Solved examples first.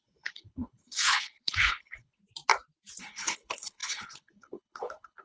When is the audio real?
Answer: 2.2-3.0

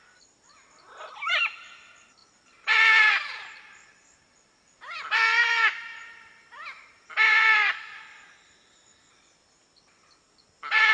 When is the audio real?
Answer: 0.0-5.4; 7.8-10.9

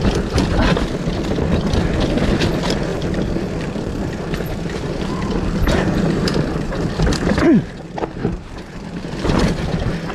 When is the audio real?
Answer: 0.0-2.9; 6.9-8.2; 8.7-10.1

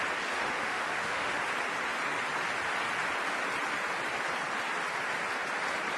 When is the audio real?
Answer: 0.0-0.6; 1.4-6.0

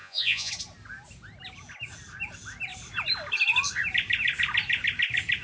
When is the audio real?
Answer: 0.5-5.4

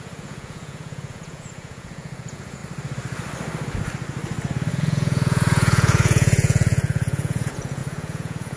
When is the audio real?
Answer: 2.6-4.7

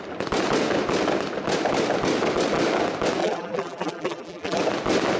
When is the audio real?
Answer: 0.0-3.2; 4.6-5.2

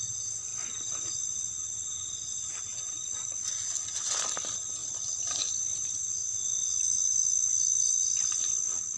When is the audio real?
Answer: 0.0-9.0